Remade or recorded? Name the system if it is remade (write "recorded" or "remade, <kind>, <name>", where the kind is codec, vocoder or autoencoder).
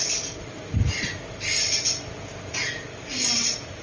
recorded